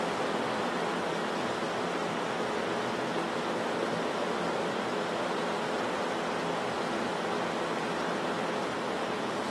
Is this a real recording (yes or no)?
yes